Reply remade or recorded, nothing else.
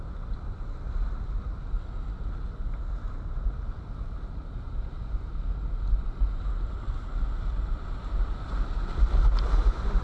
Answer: recorded